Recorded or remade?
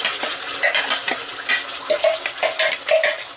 recorded